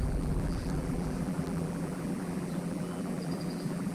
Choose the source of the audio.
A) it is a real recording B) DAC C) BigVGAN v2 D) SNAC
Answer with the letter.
C